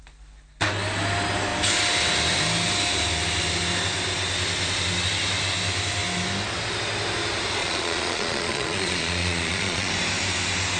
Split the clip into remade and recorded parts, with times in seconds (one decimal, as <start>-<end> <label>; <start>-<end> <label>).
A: 0.0-7.6 recorded; 7.6-9.9 remade; 9.9-10.8 recorded